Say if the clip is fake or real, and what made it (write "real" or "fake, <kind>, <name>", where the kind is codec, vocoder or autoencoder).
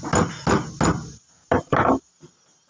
real